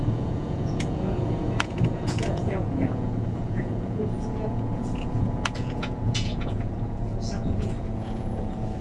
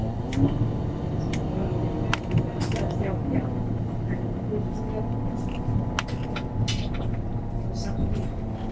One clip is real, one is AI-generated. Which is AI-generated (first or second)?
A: first